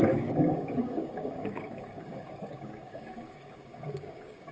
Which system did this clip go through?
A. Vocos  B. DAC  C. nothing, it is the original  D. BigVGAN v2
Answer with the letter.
B